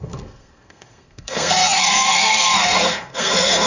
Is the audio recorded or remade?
remade